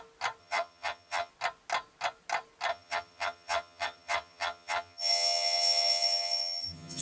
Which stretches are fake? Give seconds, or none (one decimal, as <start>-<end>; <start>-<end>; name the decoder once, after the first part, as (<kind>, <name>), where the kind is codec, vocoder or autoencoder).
0.4-1.3 (vocoder, HiFi-GAN); 2.7-7.0